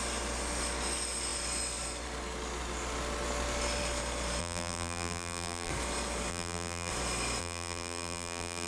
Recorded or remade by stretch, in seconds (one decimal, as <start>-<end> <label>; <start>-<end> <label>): 0.0-4.4 recorded; 4.4-5.7 remade; 5.7-6.3 recorded; 6.3-6.9 remade; 6.9-7.4 recorded; 7.4-8.7 remade